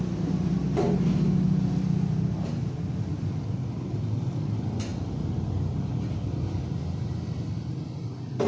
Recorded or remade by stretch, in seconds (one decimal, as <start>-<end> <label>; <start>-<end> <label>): 0.0-8.5 recorded